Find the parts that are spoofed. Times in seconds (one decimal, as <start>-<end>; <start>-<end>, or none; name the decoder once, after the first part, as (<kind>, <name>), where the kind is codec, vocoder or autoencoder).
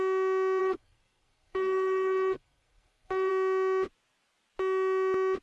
0.6-3.3 (codec, SNAC)